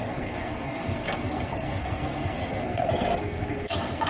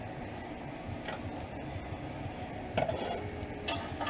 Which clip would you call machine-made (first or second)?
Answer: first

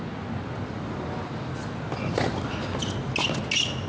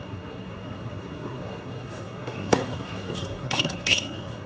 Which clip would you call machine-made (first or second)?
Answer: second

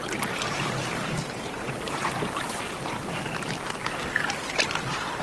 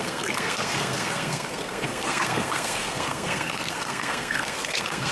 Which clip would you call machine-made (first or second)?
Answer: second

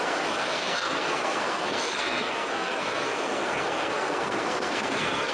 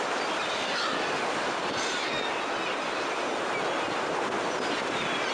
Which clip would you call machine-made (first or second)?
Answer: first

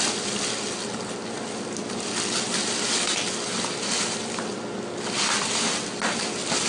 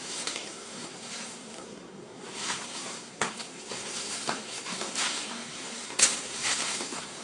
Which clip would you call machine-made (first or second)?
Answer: second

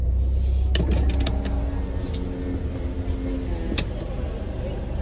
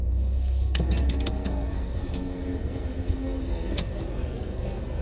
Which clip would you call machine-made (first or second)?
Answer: second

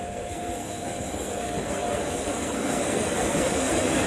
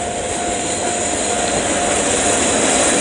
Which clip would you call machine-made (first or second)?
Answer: first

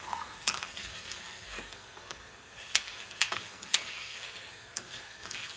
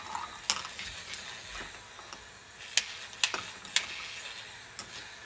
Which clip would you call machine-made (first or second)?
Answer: first